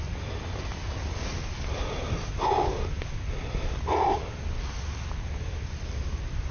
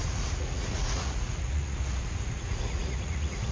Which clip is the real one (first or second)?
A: first